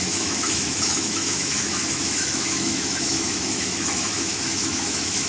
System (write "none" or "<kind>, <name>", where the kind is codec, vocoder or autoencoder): autoencoder, DAC-VAE